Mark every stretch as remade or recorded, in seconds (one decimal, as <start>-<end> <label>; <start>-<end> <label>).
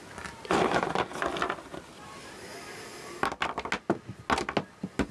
0.0-5.1 recorded